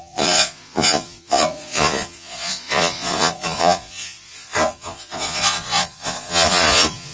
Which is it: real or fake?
fake